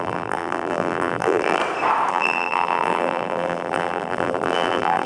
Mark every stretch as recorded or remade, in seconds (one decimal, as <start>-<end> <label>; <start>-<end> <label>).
0.0-1.6 remade; 1.6-2.1 recorded; 2.1-5.1 remade